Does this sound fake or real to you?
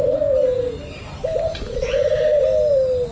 real